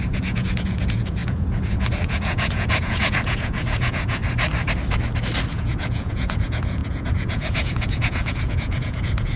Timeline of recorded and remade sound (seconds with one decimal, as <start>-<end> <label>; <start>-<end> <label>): 0.0-4.2 remade; 4.2-5.5 recorded; 5.5-9.4 remade

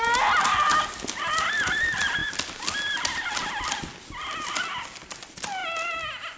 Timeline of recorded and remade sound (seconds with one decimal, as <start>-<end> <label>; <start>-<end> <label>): 0.0-6.4 recorded

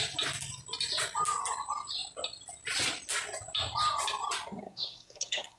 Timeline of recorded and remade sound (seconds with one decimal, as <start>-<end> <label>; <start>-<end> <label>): 0.0-4.6 recorded; 4.6-5.6 remade

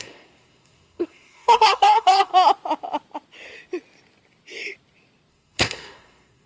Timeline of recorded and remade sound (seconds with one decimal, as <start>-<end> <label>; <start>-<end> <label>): 0.0-2.3 remade; 2.3-5.3 recorded; 5.3-6.5 remade

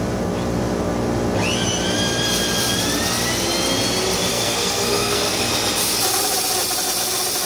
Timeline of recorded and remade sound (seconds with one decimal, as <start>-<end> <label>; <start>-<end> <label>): 0.0-4.3 recorded; 4.3-5.5 remade; 5.5-7.5 recorded

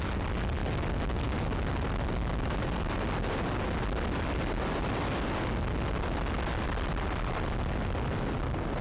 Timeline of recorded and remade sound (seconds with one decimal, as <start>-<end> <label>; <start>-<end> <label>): 0.0-8.8 recorded

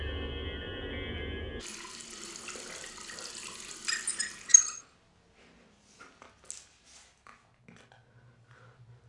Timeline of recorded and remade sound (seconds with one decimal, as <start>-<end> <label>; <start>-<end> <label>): 0.0-9.1 recorded

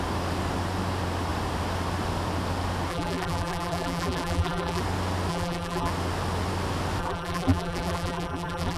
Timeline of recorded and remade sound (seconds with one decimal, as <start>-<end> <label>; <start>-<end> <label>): 0.0-2.9 recorded; 2.9-4.8 remade; 4.8-5.3 recorded; 5.3-5.9 remade; 5.9-7.0 recorded; 7.0-8.8 remade